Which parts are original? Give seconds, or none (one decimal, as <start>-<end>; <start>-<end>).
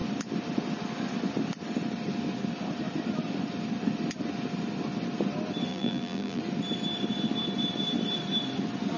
0.0-5.7; 6.4-9.0